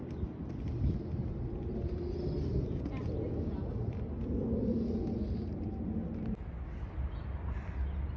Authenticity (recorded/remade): recorded